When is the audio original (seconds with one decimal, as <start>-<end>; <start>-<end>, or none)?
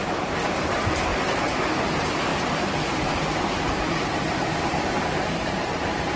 none